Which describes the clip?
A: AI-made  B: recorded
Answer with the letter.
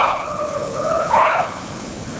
A